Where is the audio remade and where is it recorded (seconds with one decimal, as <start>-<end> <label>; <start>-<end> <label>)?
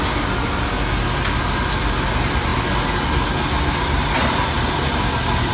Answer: 0.0-5.5 recorded